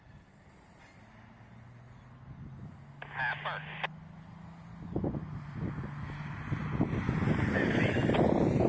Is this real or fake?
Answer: real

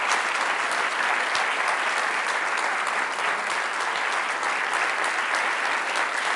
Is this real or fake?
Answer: real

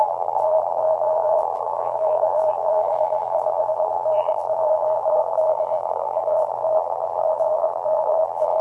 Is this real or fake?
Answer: fake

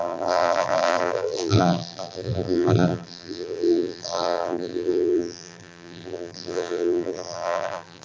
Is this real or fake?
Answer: fake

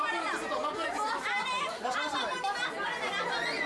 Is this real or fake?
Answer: real